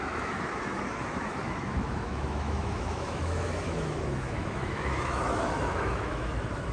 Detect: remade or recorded remade